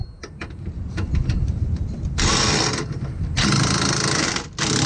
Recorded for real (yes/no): yes